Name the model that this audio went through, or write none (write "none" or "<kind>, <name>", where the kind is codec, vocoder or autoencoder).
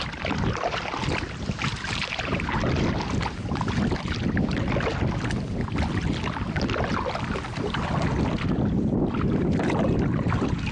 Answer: none